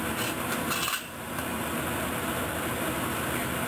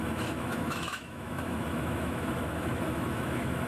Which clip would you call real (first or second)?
first